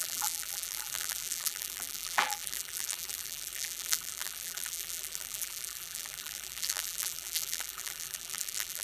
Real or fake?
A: fake